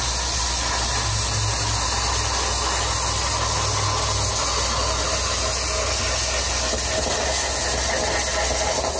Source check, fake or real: real